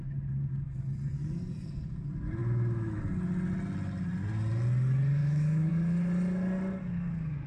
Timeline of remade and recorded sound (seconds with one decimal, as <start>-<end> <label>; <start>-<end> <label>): 0.0-2.4 recorded; 2.4-3.0 remade; 3.0-5.2 recorded; 5.2-5.7 remade; 5.7-7.5 recorded